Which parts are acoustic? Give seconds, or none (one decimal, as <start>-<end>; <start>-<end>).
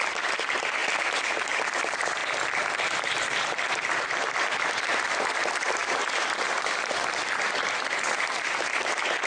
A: 2.2-4.7; 5.8-9.3